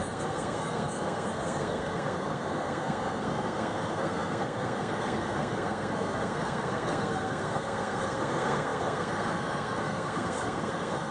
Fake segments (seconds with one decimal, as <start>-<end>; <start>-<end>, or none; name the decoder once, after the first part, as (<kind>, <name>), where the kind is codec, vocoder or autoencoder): 0.0-11.1 (codec, SNAC)